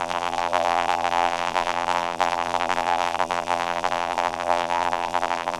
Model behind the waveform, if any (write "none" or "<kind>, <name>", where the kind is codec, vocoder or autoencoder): vocoder, BigVGAN v2